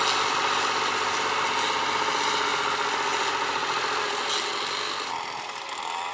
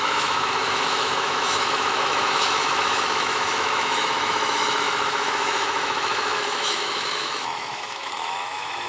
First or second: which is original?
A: first